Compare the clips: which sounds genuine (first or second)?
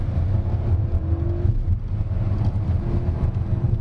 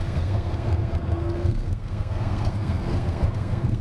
first